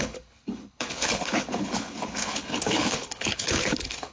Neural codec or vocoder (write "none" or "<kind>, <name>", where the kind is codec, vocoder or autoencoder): codec, HILCodec